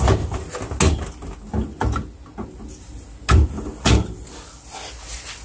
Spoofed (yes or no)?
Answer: no